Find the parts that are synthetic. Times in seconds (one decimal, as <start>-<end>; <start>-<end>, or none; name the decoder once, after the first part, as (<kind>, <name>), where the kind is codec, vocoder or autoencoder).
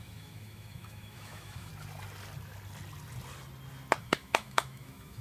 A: 0.0-1.7 (autoencoder, DAC-VAE); 4.0-5.2